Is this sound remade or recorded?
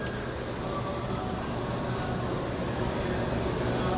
recorded